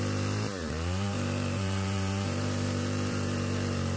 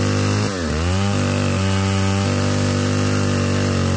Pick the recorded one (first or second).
second